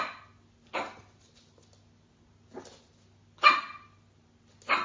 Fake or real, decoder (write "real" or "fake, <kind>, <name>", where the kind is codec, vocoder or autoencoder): real